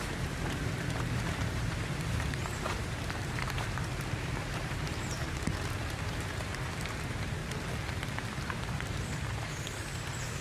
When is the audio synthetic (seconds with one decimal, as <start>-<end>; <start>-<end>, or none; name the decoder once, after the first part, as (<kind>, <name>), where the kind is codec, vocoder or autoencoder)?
0.0-7.4 (vocoder, BigVGAN v2); 7.9-10.4